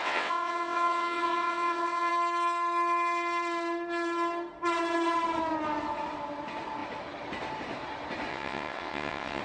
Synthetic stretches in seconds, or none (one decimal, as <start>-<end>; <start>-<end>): 0.0-2.1; 8.3-9.4